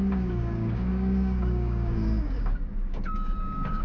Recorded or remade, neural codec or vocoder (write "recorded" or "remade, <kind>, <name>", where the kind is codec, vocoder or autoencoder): remade, codec, DAC